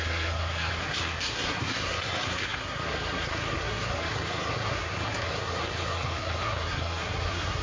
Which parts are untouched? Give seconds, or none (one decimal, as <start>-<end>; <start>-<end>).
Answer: none